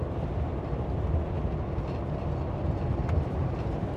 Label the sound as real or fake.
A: real